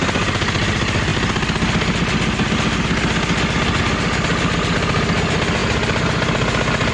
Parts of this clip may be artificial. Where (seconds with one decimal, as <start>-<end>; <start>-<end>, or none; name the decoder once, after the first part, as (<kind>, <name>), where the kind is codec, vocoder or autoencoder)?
none